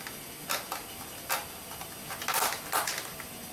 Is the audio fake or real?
real